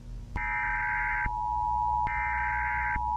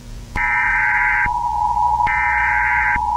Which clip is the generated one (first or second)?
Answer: second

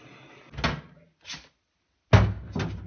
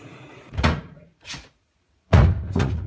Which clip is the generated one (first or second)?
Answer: second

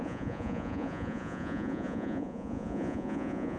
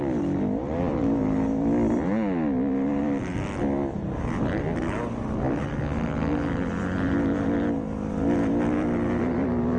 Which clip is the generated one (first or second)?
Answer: first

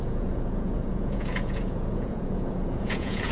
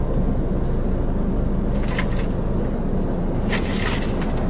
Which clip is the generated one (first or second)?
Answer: first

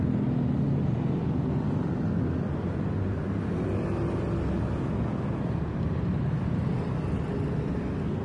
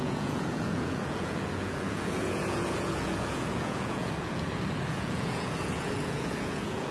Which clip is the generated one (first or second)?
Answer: second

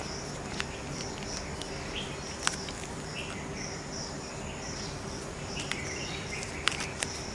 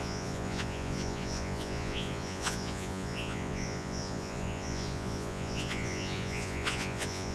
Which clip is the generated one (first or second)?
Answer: second